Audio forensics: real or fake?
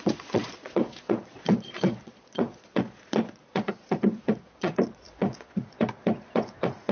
fake